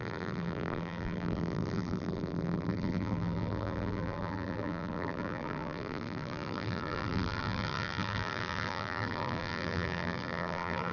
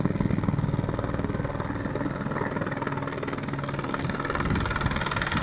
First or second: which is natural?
second